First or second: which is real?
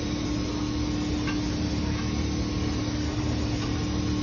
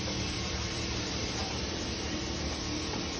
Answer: first